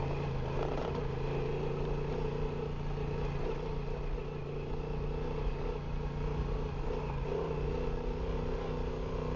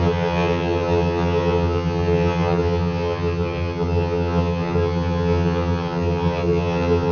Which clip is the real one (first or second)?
first